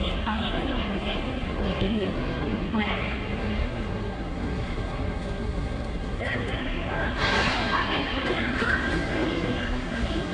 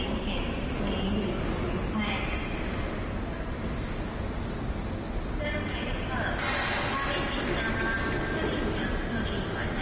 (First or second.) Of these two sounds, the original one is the second